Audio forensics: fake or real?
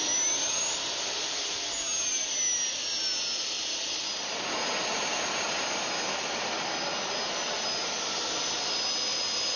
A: real